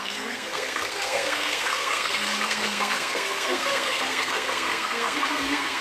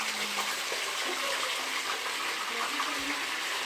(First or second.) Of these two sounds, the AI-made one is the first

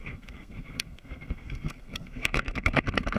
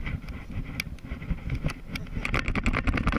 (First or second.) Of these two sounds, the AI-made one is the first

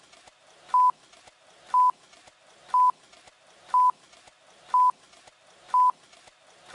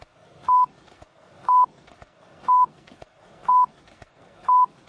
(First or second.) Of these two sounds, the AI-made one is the second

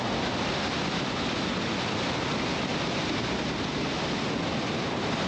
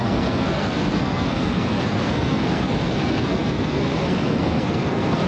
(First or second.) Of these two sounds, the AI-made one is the second